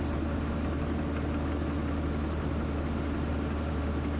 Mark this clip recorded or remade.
recorded